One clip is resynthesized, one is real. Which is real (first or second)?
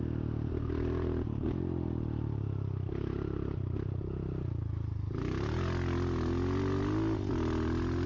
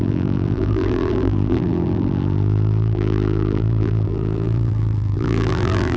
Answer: first